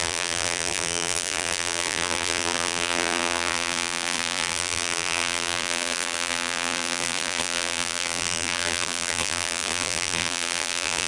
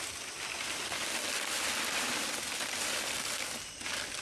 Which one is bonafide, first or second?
second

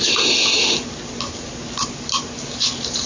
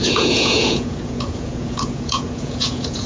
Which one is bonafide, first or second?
first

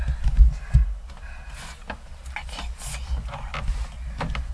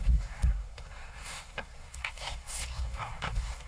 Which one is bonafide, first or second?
first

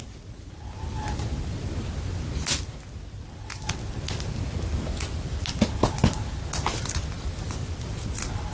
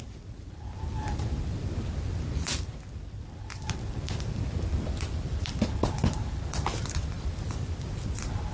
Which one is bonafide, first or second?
first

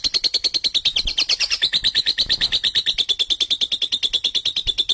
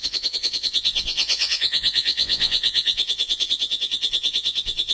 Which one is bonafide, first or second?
first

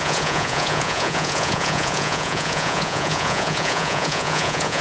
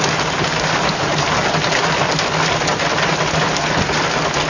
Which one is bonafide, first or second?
second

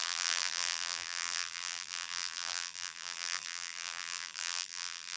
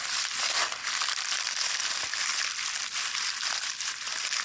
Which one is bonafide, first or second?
second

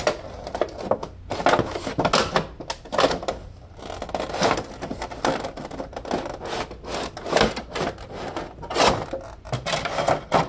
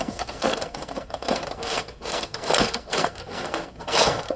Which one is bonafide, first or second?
first